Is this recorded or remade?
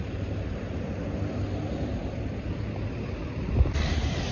recorded